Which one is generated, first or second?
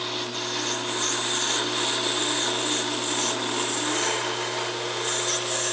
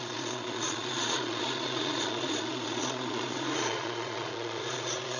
second